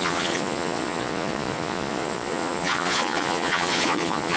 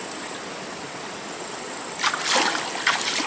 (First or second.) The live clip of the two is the second